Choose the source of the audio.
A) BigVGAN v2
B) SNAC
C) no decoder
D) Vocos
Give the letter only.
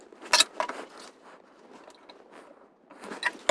C